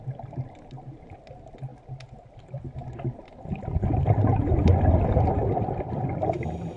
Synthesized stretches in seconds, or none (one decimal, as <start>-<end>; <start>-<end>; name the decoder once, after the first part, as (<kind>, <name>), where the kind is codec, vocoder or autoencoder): none